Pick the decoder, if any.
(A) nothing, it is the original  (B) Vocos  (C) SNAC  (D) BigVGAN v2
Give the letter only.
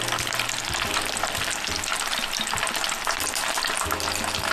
A